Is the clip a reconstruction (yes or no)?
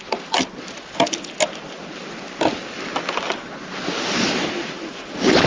no